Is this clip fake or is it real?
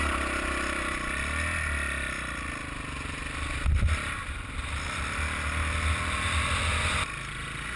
real